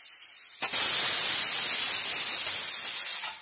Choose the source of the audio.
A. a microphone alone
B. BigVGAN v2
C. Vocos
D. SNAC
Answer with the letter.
A